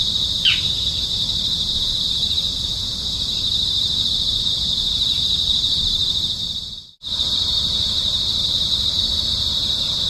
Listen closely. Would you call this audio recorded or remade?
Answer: remade